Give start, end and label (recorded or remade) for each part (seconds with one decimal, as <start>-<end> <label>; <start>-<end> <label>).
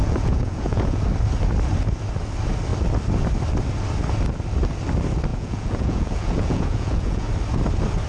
0.0-1.0 remade; 1.0-5.3 recorded; 5.3-7.3 remade; 7.3-8.1 recorded